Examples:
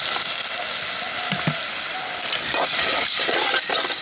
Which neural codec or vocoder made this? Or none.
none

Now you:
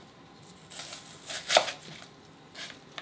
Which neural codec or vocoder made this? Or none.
none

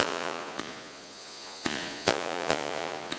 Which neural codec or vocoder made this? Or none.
vocoder, Vocos